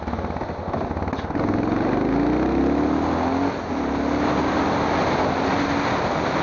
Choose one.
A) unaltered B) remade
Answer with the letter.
A